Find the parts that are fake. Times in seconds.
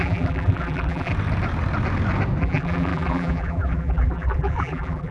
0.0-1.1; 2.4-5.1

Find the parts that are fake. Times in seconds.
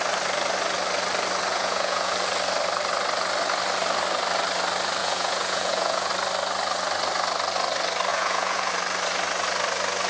1.5-2.1; 5.0-6.1; 8.1-8.7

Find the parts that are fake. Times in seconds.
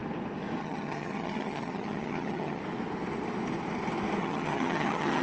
0.6-2.6; 4.2-5.2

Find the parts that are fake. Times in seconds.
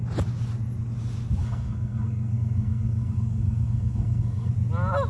1.4-4.5